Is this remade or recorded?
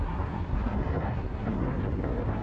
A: remade